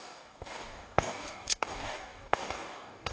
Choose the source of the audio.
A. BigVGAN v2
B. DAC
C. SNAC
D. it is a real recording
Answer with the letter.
B